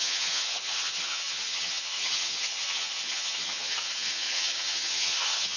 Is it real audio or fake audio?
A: fake